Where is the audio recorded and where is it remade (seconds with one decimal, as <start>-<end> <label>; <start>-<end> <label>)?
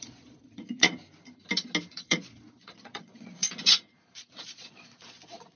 0.0-1.0 remade; 1.0-1.9 recorded; 1.9-5.6 remade